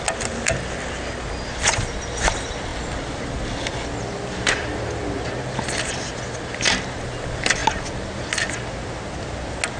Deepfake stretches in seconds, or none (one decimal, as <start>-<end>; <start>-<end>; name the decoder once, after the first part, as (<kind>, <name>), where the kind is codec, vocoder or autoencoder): none